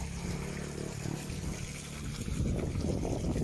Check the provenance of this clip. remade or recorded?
recorded